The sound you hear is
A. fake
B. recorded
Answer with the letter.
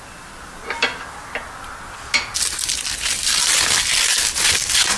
B